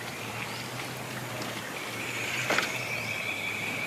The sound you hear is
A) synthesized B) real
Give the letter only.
B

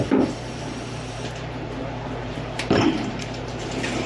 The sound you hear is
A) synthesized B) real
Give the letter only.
A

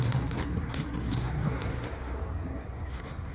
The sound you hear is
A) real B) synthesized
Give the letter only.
B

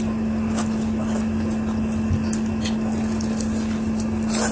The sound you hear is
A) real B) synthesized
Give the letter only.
A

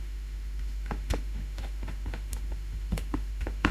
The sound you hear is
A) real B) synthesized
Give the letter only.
B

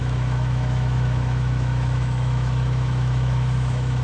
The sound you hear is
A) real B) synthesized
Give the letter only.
B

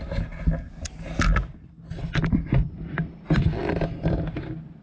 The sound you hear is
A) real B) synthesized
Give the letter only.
A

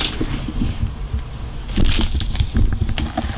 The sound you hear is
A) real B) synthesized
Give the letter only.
A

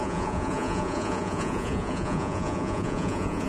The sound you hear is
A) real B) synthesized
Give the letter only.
B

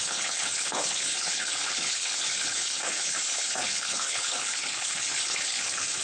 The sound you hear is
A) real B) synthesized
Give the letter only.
B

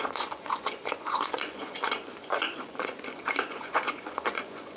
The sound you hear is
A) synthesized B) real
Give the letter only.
A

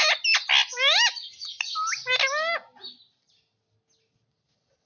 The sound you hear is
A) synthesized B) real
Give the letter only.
B